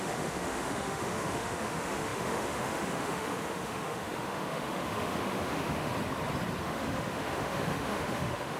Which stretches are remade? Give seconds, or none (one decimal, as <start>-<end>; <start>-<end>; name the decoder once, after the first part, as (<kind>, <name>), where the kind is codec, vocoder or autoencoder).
0.0-5.9 (autoencoder, DAC-VAE); 6.6-8.6